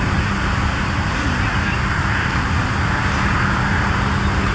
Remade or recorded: recorded